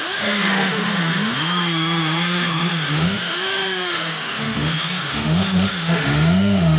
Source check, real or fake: fake